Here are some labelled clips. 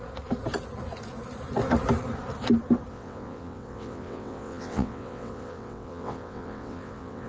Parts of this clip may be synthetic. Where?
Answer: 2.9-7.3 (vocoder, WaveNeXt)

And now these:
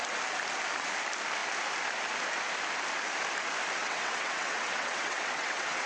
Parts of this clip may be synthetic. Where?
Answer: 3.8-5.9 (vocoder, WaveNeXt)

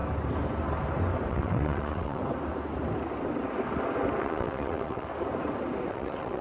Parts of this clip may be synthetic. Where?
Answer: 1.3-2.2 (vocoder, WaveNeXt); 4.2-5.1; 5.9-6.4

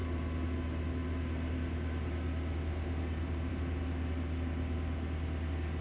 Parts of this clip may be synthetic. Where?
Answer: none

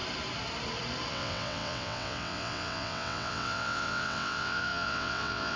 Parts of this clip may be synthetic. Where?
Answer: 1.1-5.6 (vocoder, WaveNeXt)

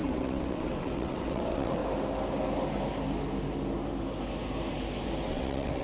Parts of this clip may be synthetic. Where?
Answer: 0.0-1.8 (vocoder, WaveNeXt); 5.3-5.8